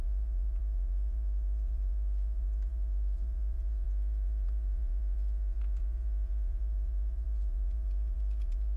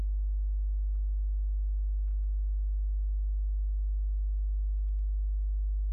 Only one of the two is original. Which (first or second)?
second